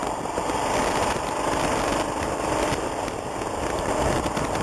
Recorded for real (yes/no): yes